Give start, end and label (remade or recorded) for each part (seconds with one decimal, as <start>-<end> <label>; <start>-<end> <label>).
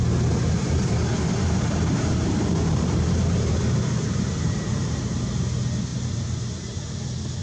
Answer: 0.0-0.6 recorded; 0.6-5.0 remade; 5.0-5.9 recorded; 5.9-7.0 remade; 7.0-7.4 recorded